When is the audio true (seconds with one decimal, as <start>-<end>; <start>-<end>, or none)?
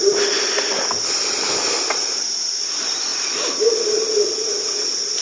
0.0-5.2